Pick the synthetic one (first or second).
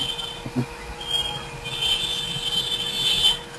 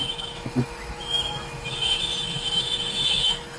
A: second